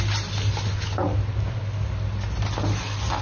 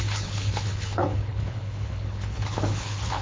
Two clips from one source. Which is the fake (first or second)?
second